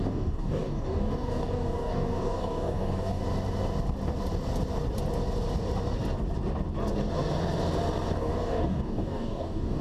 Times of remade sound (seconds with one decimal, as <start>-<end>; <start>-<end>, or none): 0.0-3.2; 8.2-9.8